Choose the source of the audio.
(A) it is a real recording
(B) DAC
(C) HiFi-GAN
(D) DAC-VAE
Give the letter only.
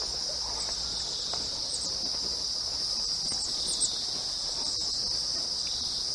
A